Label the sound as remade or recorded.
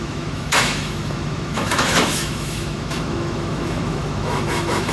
remade